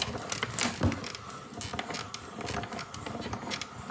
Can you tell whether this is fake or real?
real